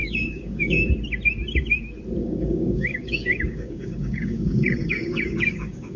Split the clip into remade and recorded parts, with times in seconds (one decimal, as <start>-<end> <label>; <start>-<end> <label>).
0.0-0.9 remade; 0.9-2.2 recorded; 2.2-6.0 remade